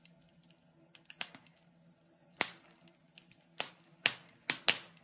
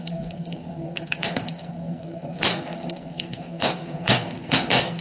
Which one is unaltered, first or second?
first